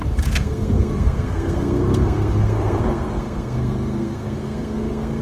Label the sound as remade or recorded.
remade